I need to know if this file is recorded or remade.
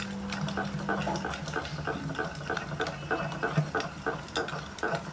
recorded